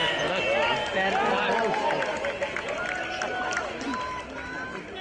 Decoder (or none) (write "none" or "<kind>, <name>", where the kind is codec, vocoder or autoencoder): none